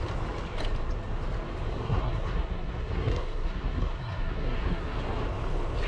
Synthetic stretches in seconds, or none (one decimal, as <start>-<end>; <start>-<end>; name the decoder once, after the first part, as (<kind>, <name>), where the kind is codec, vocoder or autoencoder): 1.7-5.2 (codec, SNAC)